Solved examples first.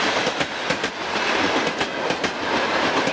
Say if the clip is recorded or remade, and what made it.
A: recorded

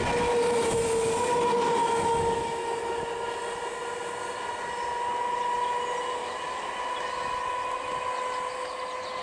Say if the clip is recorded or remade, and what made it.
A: recorded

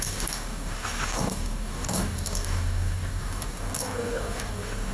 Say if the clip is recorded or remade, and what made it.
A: remade, codec, DAC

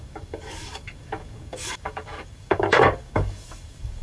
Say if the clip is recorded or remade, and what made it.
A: remade, codec, DAC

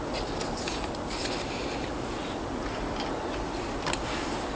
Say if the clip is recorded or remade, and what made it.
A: recorded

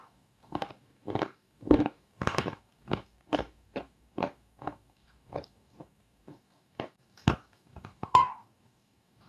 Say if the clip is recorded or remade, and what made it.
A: remade, codec, DAC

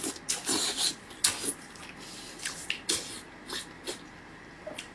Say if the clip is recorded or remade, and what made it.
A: recorded